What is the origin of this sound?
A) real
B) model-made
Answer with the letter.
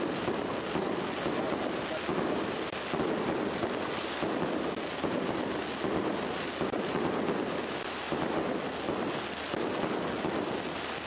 A